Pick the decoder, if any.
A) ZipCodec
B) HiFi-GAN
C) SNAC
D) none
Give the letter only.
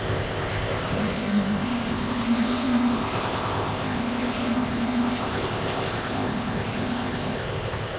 A